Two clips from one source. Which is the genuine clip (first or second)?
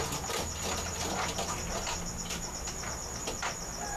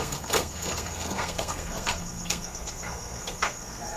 first